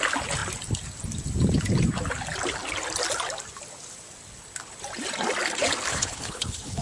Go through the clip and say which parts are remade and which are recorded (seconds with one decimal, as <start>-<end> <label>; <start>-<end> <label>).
0.0-5.9 recorded; 5.9-6.8 remade